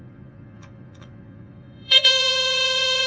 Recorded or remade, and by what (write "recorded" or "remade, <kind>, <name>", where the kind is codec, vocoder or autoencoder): remade, vocoder, Vocos